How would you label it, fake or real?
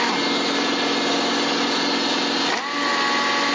real